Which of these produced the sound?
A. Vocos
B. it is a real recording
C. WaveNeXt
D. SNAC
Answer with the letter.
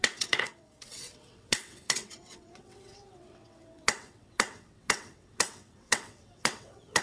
C